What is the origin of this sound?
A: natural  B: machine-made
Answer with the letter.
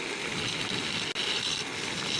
A